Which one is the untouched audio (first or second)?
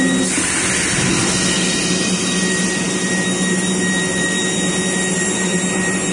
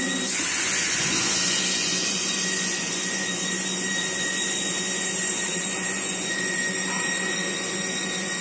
first